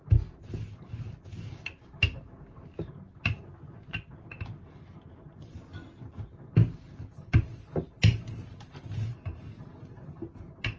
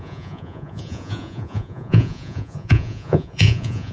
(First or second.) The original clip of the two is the first